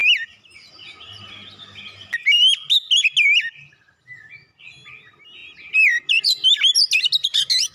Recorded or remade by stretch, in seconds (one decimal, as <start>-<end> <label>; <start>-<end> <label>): 0.0-7.7 recorded